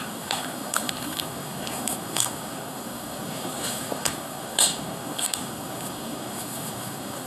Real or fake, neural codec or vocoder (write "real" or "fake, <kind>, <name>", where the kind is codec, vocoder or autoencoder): fake, codec, SNAC